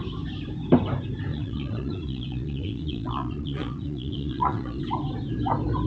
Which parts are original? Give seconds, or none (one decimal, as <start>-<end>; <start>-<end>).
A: 0.0-1.3; 4.8-5.9